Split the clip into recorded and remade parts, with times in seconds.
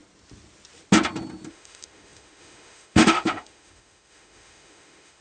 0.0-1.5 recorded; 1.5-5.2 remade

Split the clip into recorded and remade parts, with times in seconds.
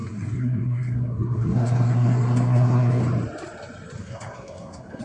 0.0-3.0 remade; 3.0-4.0 recorded; 4.0-5.0 remade